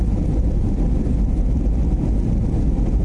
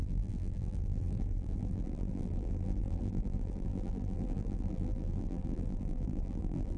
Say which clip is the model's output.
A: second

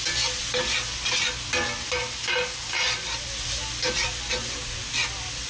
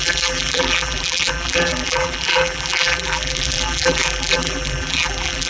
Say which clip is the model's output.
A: second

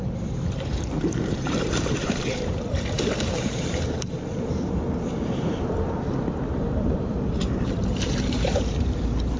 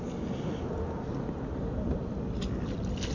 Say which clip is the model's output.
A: first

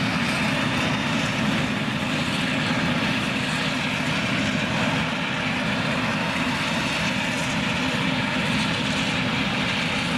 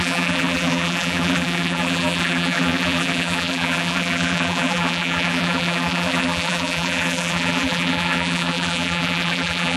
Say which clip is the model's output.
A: second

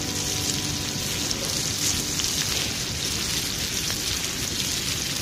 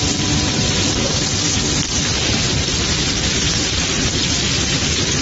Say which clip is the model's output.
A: second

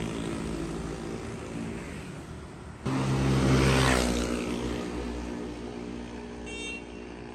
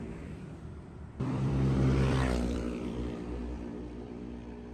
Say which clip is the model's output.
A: second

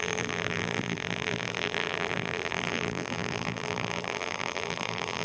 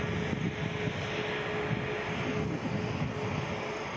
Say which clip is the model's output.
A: first